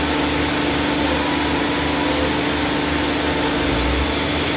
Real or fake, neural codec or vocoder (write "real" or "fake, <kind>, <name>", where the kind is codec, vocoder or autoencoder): real